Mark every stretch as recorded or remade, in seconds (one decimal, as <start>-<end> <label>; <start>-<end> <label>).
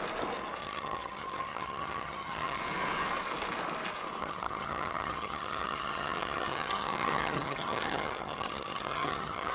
0.0-0.6 recorded; 0.6-2.6 remade; 2.6-4.2 recorded; 4.2-9.5 remade